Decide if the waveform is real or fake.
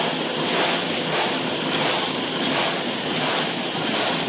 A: real